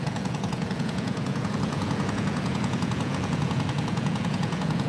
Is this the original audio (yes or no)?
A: no